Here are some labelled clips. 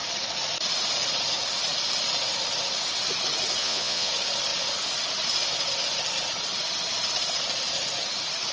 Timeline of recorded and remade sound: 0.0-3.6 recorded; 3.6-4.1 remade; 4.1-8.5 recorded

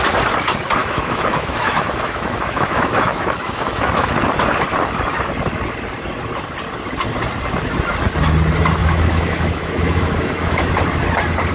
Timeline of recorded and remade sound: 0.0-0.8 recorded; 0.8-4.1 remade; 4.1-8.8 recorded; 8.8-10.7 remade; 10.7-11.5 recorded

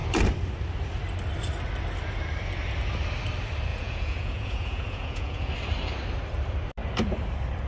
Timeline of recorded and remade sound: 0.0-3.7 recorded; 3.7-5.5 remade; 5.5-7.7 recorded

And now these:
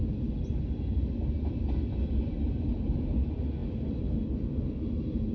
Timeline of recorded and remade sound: 0.0-5.3 recorded